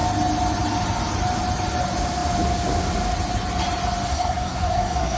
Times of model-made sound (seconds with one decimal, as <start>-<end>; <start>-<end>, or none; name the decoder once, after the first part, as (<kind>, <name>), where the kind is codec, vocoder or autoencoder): 4.1-5.2 (codec, SNAC)

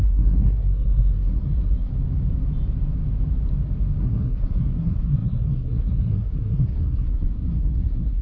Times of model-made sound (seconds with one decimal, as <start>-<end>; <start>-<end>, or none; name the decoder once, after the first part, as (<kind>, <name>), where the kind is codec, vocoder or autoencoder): 0.0-1.9 (codec, SNAC); 4.0-8.2

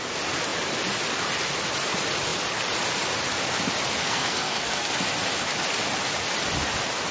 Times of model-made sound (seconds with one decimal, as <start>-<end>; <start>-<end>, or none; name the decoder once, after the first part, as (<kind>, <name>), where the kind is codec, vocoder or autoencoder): 4.0-4.9 (codec, SNAC)